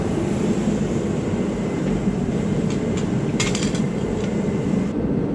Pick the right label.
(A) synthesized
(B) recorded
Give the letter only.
A